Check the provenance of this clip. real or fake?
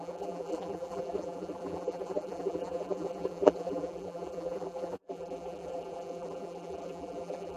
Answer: fake